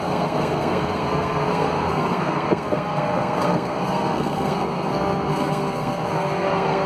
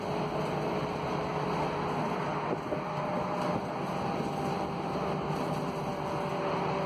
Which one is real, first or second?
second